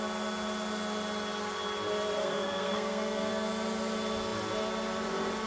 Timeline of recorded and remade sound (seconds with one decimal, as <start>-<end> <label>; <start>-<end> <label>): 0.0-2.2 recorded; 2.2-3.3 remade; 3.3-5.5 recorded